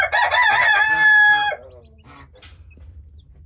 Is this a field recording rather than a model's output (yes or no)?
yes